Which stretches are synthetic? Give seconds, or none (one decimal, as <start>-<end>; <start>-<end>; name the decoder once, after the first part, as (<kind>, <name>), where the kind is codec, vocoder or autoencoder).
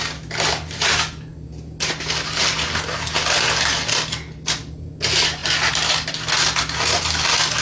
none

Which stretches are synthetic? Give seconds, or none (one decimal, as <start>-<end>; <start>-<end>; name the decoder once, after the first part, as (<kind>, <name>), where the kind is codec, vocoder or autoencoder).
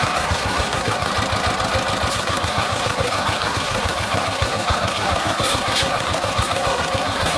0.0-1.1 (codec, SNAC); 2.1-7.4